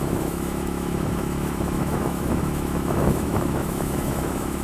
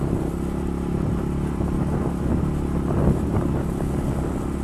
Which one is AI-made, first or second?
first